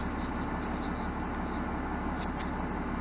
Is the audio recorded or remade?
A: recorded